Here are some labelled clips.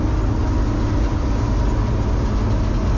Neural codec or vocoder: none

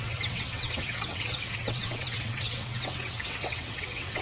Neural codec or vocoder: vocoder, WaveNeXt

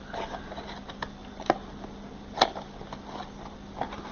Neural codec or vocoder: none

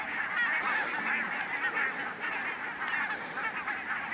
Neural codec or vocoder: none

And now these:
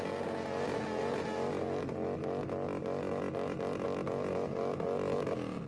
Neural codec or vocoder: none